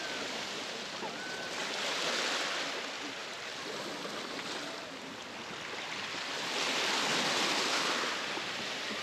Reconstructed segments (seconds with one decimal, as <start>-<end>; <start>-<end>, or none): 0.0-1.6; 2.4-7.1; 8.1-9.0